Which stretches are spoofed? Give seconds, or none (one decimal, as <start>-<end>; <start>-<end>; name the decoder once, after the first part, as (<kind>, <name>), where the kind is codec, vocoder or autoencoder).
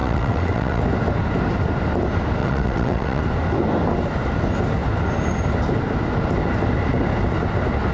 0.0-0.8 (vocoder, WaveNeXt); 2.4-3.2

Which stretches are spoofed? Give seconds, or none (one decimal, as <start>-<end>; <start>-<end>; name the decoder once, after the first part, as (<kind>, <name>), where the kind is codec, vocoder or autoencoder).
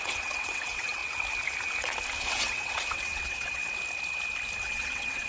0.0-1.0 (vocoder, WaveNeXt); 2.2-3.6; 4.6-5.3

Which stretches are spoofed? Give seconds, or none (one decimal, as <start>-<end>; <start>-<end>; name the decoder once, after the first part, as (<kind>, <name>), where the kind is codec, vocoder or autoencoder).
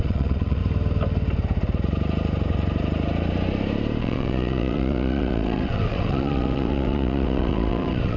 0.0-0.6 (vocoder, WaveNeXt); 4.0-8.2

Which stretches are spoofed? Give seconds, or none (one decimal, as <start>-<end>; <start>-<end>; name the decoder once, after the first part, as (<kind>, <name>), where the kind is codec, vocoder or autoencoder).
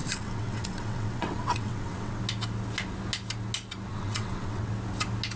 0.0-2.2 (vocoder, WaveNeXt); 3.9-4.7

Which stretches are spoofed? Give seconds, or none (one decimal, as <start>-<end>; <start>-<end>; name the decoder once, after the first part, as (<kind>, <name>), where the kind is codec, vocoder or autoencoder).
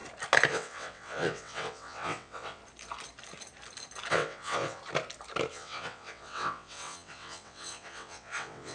0.5-2.6 (vocoder, WaveNeXt); 4.1-4.8; 5.5-8.7